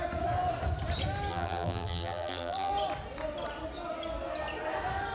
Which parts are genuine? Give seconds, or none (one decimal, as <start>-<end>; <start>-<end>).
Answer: 0.0-1.3; 2.7-5.1